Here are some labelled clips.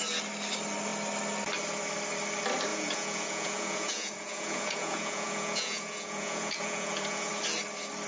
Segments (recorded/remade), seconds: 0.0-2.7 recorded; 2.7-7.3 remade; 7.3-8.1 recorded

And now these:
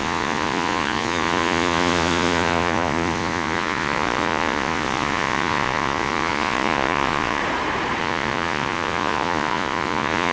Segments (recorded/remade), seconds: 0.0-7.4 remade; 7.4-8.0 recorded; 8.0-10.3 remade

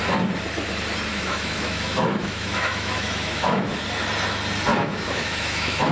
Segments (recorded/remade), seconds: 0.0-1.1 recorded; 1.1-3.8 remade; 3.8-4.7 recorded; 4.7-5.9 remade